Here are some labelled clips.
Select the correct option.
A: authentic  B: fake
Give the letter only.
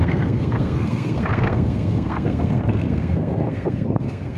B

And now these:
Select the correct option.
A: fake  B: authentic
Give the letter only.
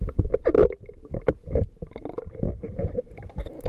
B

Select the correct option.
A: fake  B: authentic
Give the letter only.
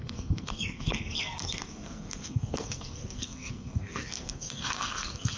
A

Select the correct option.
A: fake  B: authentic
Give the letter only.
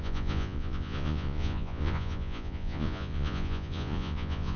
A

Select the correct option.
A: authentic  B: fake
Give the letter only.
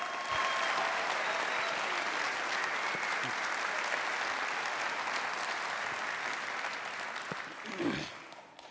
A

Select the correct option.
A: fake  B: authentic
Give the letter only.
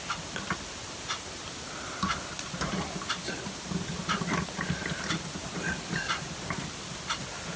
B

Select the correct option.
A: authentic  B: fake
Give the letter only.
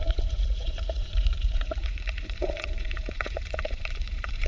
B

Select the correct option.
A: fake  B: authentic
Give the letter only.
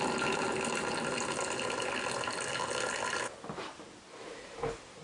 B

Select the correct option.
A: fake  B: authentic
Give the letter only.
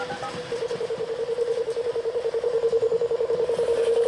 A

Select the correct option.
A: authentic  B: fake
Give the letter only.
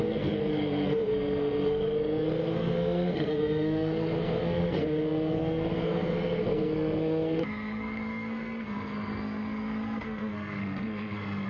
B